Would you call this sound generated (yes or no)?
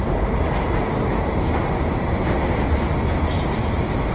no